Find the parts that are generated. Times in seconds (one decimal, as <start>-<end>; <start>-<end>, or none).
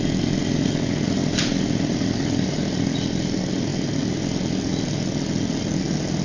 none